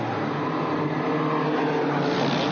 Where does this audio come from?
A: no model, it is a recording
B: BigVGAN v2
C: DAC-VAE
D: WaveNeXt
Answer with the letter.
A